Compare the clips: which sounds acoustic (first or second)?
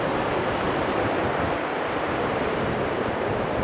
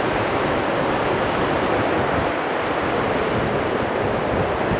second